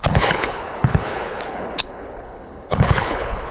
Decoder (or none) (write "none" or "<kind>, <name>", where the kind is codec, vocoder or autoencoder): codec, HILCodec